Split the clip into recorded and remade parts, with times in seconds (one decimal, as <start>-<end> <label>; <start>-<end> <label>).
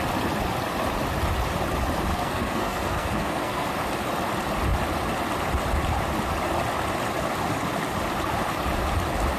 0.0-2.1 recorded; 2.1-3.7 remade; 3.7-9.4 recorded